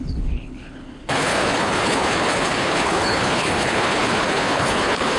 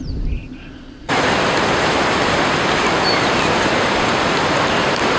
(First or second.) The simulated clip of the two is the first